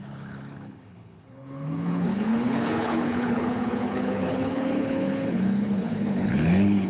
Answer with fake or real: fake